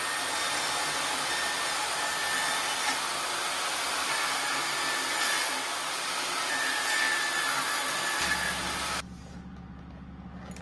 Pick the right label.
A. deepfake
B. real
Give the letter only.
B